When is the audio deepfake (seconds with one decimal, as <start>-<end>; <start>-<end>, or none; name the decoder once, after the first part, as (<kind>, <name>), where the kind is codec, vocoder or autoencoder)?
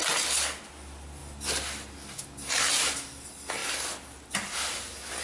none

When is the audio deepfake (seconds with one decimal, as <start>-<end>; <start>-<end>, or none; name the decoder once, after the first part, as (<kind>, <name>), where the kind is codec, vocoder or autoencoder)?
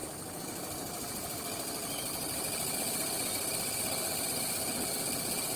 none